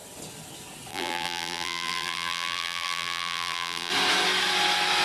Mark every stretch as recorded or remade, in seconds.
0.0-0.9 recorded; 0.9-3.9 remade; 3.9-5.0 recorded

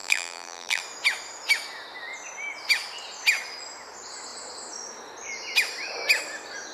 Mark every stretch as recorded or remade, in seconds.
0.0-0.8 remade; 0.8-6.7 recorded

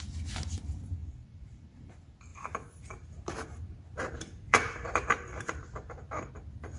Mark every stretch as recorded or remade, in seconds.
0.0-1.0 recorded; 1.0-1.9 remade; 1.9-2.3 recorded; 2.3-6.3 remade; 6.3-6.8 recorded

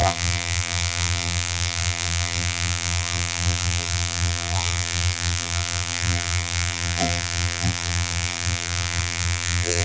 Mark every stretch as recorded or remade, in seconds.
0.0-9.8 remade

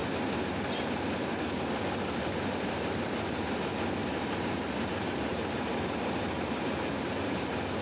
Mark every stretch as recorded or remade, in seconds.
0.0-4.0 recorded; 4.0-7.8 remade

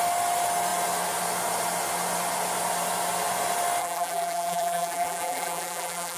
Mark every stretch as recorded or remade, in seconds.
0.0-3.8 recorded; 3.8-6.2 remade

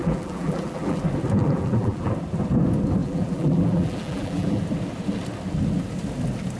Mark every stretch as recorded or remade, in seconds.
0.0-1.0 remade; 1.0-1.4 recorded; 1.4-2.1 remade; 2.1-3.0 recorded; 3.0-4.6 remade; 4.6-6.6 recorded

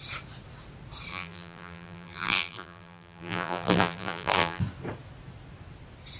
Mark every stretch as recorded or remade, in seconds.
0.0-1.1 recorded; 1.1-4.6 remade; 4.6-6.2 recorded